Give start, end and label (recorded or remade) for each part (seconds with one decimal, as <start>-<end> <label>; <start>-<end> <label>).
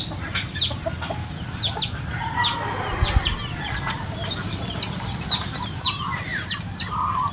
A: 0.0-7.3 recorded